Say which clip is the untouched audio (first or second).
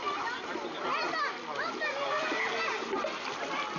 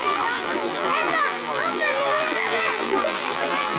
first